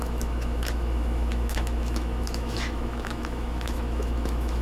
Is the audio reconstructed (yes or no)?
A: yes